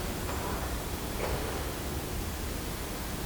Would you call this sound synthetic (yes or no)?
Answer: no